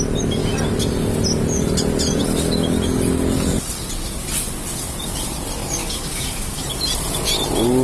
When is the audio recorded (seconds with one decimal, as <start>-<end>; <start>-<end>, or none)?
0.0-5.8; 6.6-7.8